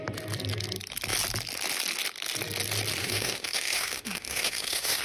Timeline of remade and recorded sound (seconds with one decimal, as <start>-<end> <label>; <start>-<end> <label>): 0.0-3.0 recorded; 3.0-5.0 remade